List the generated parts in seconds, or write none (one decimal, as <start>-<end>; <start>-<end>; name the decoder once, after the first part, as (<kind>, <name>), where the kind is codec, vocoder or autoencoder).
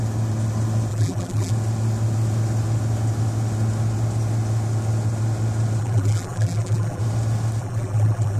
0.9-1.5 (vocoder, BigVGAN v2); 5.8-7.0; 7.6-8.4